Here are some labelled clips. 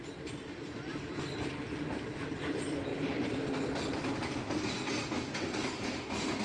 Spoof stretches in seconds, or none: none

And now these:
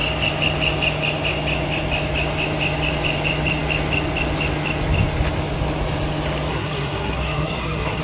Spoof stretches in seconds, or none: 6.5-8.0

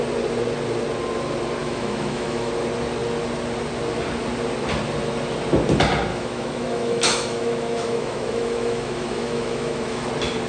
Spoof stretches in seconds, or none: 1.6-2.5; 6.1-10.1